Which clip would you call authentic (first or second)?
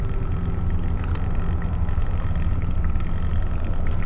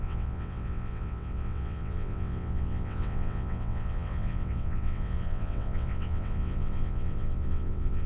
first